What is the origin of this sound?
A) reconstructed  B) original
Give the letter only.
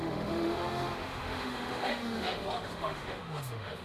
A